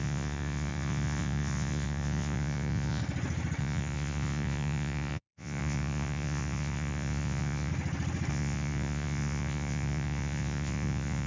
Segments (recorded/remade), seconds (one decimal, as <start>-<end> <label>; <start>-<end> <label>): 0.0-3.0 remade; 3.0-3.6 recorded; 3.6-7.7 remade; 7.7-8.3 recorded; 8.3-11.3 remade